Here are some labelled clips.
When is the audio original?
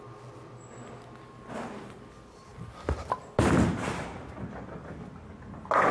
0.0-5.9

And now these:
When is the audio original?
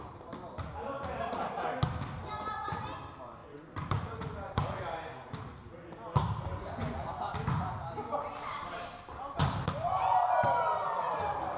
0.0-3.4; 4.8-6.5; 7.2-11.6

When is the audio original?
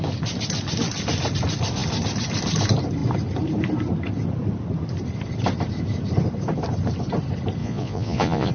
0.0-7.6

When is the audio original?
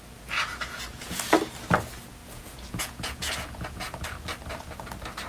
0.0-0.5; 1.3-2.2; 4.0-5.3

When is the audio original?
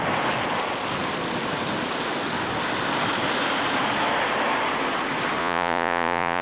0.0-5.4